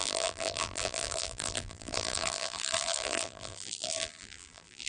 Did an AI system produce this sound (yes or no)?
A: yes